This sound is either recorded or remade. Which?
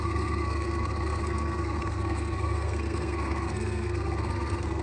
remade